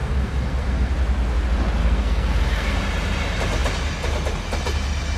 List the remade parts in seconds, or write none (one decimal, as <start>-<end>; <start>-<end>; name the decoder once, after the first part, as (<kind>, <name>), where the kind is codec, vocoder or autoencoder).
0.0-0.9 (codec, SNAC); 1.8-2.8